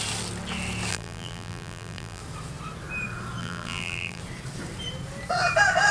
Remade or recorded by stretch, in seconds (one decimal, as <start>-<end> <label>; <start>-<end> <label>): 0.0-0.9 recorded; 0.9-2.2 remade; 2.2-3.4 recorded; 3.4-4.2 remade; 4.2-5.9 recorded